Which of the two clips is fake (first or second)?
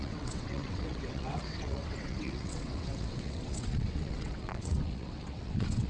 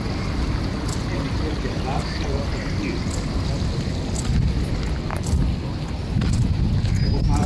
first